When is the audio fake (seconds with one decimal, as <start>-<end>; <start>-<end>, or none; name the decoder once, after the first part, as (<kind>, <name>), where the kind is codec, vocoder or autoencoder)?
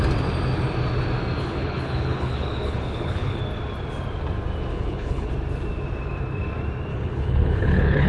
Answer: 1.4-3.4 (codec, HILCodec); 4.7-5.3; 6.9-8.1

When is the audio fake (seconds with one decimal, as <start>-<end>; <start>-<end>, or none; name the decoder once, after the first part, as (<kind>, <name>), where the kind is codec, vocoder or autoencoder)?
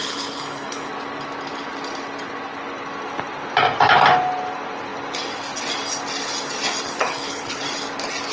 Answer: 0.0-0.9 (codec, HILCodec); 7.0-7.6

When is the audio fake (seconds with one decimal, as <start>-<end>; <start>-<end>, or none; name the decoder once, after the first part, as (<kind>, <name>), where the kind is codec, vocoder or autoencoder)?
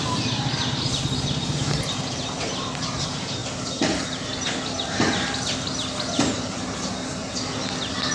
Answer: none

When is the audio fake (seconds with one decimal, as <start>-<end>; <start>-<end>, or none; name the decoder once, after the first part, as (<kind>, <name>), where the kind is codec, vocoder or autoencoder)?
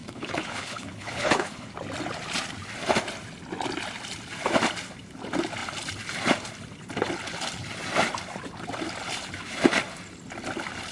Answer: 0.0-1.7 (codec, HILCodec)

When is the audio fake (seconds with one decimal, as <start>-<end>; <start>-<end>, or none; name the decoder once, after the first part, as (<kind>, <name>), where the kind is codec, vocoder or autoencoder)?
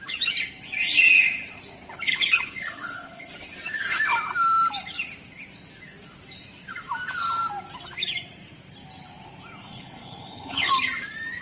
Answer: 2.1-3.3 (codec, HILCodec); 9.7-10.7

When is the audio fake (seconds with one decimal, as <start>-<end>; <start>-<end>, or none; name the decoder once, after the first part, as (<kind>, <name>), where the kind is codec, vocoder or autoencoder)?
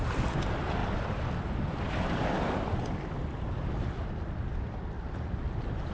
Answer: none